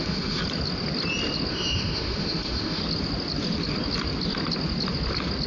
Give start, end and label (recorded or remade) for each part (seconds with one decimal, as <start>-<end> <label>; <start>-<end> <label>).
0.0-0.4 remade; 0.4-1.5 recorded; 1.5-2.8 remade; 2.8-5.5 recorded